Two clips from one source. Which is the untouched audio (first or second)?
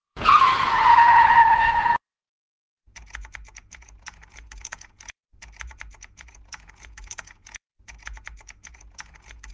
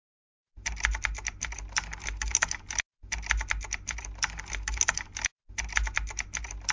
second